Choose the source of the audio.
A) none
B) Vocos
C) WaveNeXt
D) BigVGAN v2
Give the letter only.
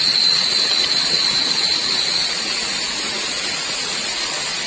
B